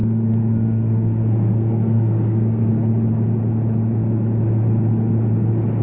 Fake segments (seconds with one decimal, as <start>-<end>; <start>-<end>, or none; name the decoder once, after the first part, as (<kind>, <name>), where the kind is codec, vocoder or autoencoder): 0.0-2.7 (codec, SNAC)